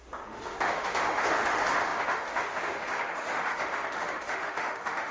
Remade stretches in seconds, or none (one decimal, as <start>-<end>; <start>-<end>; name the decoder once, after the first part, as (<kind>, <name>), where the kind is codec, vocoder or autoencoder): 0.0-5.1 (autoencoder, DAC-VAE)